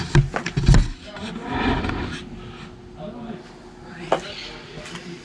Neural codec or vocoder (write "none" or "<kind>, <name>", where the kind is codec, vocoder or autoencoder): none